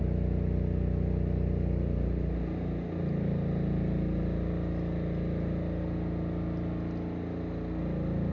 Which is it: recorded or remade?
recorded